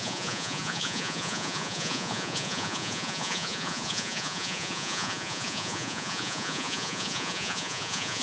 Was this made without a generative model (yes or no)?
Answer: no